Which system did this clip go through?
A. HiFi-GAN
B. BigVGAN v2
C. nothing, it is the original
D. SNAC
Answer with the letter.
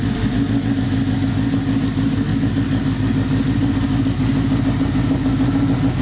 C